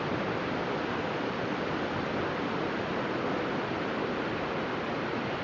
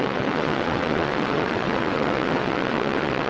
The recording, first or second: first